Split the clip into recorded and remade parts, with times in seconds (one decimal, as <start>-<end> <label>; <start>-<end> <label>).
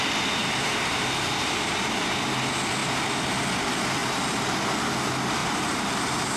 0.0-0.4 recorded; 0.4-1.8 remade; 1.8-4.0 recorded; 4.0-4.8 remade; 4.8-5.4 recorded; 5.4-6.4 remade